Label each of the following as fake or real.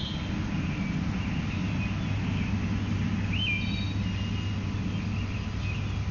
real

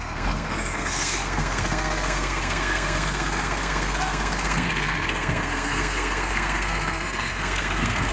fake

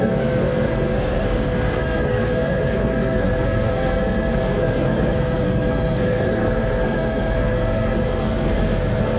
fake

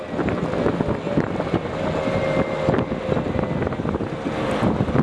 real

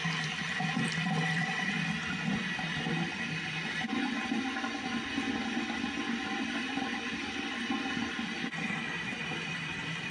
real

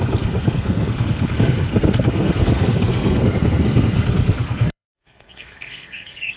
fake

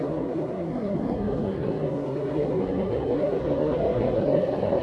fake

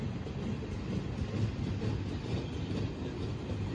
real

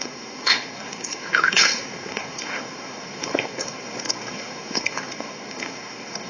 fake